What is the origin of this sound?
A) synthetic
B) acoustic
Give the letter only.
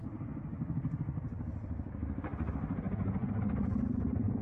B